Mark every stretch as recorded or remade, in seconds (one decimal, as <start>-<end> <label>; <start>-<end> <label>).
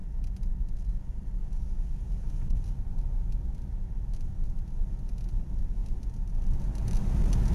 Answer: 0.0-1.4 recorded; 1.4-2.6 remade; 2.6-7.5 recorded